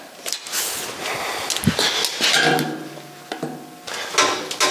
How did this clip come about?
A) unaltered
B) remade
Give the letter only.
A